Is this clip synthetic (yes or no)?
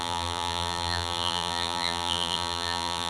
yes